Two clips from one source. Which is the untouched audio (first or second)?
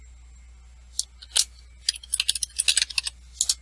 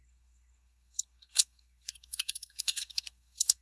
first